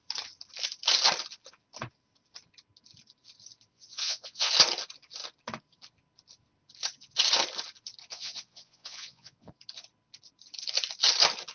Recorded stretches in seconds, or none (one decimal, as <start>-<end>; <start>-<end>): 0.0-3.7; 4.5-8.1; 9.5-11.5

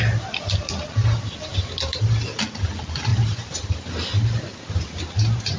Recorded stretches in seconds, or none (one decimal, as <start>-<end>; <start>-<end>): 0.0-1.5; 2.0-3.1

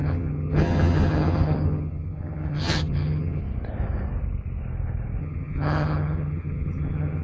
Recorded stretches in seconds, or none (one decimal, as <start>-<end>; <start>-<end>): 3.4-5.2